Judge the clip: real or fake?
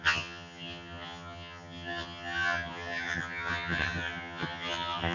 fake